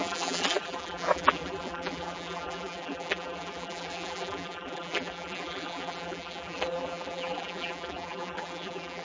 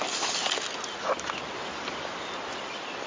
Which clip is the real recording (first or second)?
second